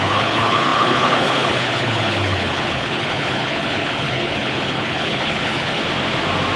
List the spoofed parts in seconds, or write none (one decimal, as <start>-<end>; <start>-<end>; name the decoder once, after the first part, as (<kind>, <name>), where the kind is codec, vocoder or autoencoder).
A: 0.0-5.8 (codec, HILCodec)